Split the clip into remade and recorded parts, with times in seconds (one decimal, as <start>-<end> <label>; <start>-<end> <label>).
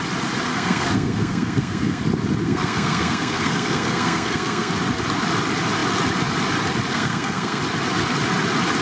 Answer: 0.0-0.5 recorded; 0.5-2.0 remade; 2.0-2.4 recorded; 2.4-4.7 remade; 4.7-6.9 recorded; 6.9-7.6 remade; 7.6-8.8 recorded